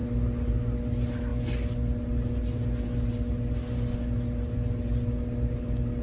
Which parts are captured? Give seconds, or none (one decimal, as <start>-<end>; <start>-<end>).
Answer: 0.0-6.0